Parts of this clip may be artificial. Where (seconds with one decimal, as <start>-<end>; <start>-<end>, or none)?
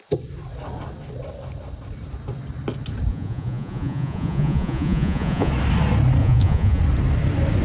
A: 3.1-5.5; 6.2-6.8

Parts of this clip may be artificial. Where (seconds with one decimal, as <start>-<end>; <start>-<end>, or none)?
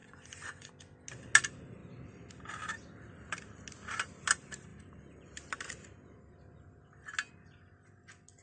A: 0.0-0.7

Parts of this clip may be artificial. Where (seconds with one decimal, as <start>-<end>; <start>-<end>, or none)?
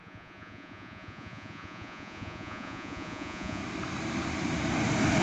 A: 0.0-3.6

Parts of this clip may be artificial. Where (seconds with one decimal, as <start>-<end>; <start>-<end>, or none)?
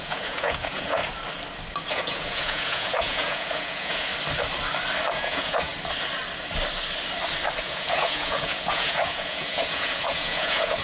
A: 0.0-1.0; 1.9-4.1; 5.1-5.7; 7.6-10.8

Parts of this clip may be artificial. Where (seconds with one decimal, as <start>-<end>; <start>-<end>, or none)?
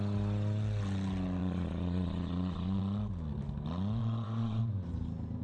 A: 1.4-2.8; 4.0-4.6